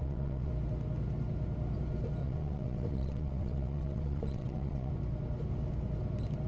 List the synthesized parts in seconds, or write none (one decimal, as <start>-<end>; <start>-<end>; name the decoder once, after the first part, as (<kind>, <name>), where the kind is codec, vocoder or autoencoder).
0.0-0.5 (vocoder, WaveNeXt); 2.2-4.9